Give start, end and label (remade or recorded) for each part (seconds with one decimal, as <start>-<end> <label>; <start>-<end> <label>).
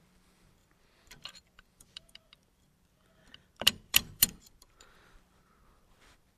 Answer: 0.0-6.4 remade